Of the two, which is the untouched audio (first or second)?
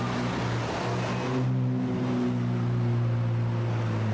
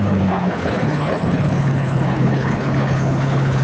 first